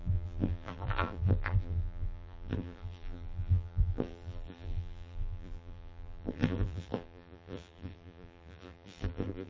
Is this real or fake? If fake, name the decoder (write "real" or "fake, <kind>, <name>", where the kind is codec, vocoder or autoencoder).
fake, vocoder, BigVGAN v2